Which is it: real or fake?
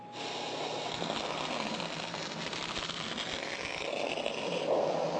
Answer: real